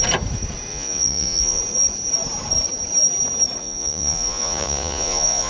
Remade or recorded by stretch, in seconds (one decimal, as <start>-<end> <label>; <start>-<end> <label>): 0.0-0.7 recorded; 0.7-1.6 remade; 1.6-3.6 recorded; 3.6-5.5 remade